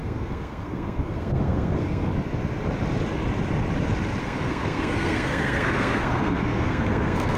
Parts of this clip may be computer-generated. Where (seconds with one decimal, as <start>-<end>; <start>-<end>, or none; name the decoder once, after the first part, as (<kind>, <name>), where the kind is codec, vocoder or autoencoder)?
0.0-2.1 (codec, SNAC); 4.2-7.4